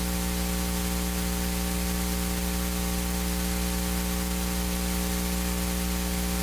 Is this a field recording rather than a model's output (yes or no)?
yes